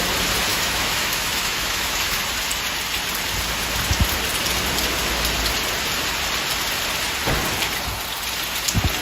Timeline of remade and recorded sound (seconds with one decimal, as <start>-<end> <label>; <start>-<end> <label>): 0.0-0.5 recorded; 0.5-2.2 remade; 2.2-9.0 recorded